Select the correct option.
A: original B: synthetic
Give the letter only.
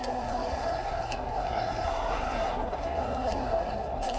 B